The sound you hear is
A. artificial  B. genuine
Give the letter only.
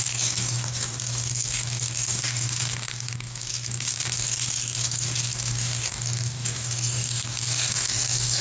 A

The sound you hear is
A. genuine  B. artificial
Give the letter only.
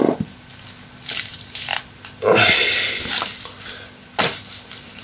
A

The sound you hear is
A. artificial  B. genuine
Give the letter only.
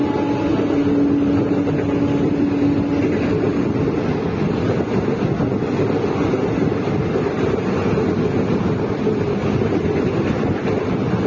B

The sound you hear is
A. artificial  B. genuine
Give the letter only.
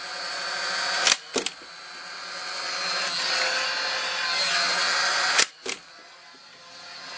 B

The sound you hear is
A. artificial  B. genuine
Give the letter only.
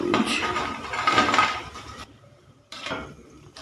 A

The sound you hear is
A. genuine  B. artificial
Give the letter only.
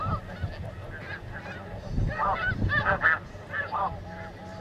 A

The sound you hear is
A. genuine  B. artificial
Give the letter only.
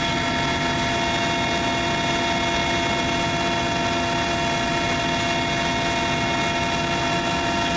A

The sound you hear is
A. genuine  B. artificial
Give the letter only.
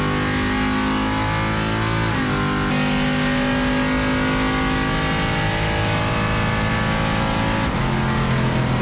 A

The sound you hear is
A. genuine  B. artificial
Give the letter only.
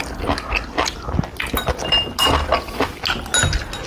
A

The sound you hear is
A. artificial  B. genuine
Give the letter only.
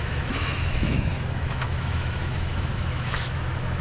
A